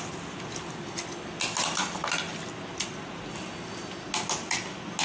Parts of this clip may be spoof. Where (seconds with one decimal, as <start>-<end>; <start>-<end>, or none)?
none